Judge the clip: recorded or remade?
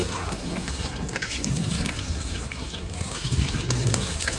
remade